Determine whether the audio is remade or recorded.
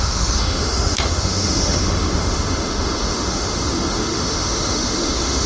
remade